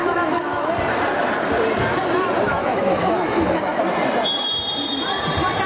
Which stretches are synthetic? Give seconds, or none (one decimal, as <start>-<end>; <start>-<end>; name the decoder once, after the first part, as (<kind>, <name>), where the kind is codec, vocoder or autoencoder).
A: 0.0-0.7 (autoencoder, DAC-VAE); 2.5-3.8